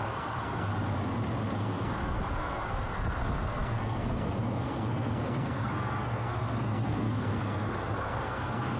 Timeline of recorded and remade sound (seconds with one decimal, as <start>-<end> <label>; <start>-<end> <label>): 0.0-0.7 remade; 0.7-1.5 recorded; 1.5-8.8 remade